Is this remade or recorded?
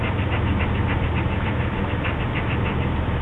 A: recorded